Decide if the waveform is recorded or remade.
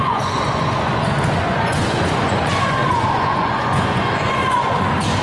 remade